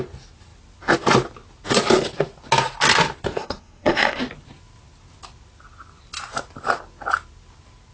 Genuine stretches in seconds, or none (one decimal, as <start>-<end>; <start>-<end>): 0.0-3.3; 4.2-7.9